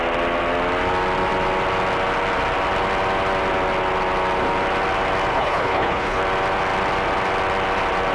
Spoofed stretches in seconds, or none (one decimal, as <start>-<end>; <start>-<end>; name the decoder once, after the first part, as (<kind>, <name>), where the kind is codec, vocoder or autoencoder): 5.3-6.2 (codec, HILCodec)